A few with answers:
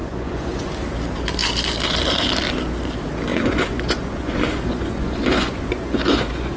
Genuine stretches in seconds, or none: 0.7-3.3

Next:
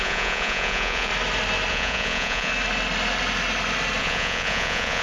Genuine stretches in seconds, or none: 1.1-1.7; 2.5-4.0

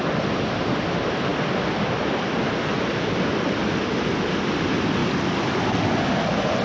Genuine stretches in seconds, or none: 0.0-6.6

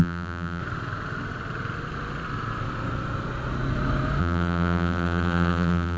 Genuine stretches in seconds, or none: 0.6-4.2

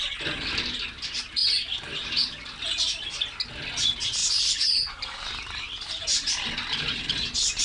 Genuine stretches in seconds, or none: 0.0-1.4; 2.0-4.2

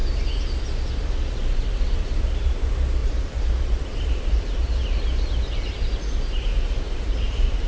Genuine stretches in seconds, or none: 0.0-2.4

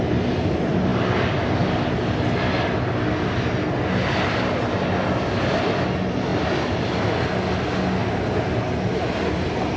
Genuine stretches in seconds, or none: 0.0-6.3; 7.0-9.8